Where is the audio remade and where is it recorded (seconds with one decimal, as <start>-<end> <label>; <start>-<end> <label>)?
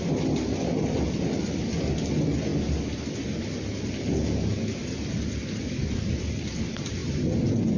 0.0-2.5 remade; 2.5-5.5 recorded; 5.5-7.0 remade; 7.0-7.8 recorded